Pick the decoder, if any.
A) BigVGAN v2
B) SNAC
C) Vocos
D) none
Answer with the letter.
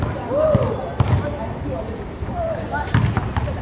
D